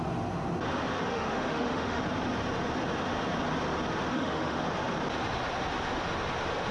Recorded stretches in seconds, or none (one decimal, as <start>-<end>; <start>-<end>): 0.0-1.1; 2.0-4.1; 4.6-6.7